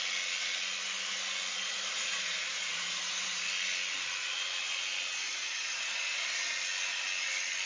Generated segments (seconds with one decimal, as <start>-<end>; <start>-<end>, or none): 1.6-3.5; 5.3-6.4